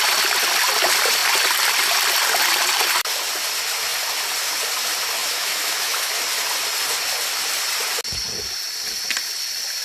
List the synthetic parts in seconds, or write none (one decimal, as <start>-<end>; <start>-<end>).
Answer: 5.2-6.1